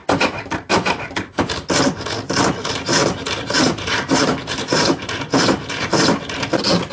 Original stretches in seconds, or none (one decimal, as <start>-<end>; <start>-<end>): 1.3-3.0; 6.0-6.9